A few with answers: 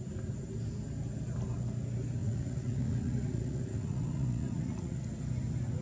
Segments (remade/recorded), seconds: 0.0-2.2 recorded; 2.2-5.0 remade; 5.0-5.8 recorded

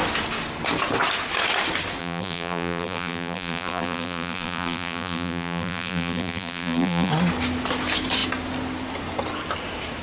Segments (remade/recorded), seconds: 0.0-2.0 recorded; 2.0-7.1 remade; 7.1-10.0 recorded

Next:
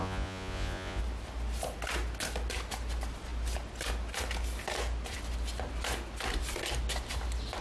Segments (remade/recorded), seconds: 0.0-1.0 remade; 1.0-7.6 recorded

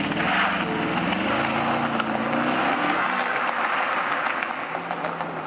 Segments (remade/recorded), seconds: 0.0-2.7 recorded; 2.7-3.4 remade; 3.4-5.5 recorded

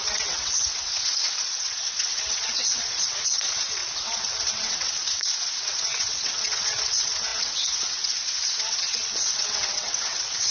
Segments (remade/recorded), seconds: 0.0-10.5 remade

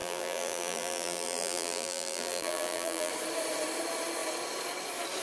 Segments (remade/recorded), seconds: 0.0-3.1 remade; 3.1-5.2 recorded

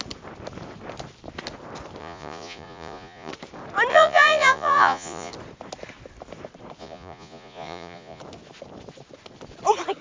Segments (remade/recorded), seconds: 0.0-2.0 recorded; 2.0-3.3 remade; 3.3-3.9 recorded; 3.9-5.3 remade; 5.3-6.8 recorded; 6.8-8.2 remade; 8.2-10.0 recorded